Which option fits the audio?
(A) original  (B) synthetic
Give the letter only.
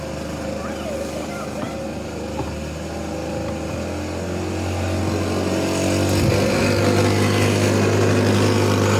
A